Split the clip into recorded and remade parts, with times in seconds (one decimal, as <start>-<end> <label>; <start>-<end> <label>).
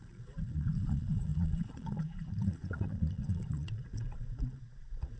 0.0-5.2 remade